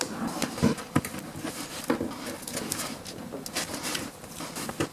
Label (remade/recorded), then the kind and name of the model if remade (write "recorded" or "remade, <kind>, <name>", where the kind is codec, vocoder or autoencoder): recorded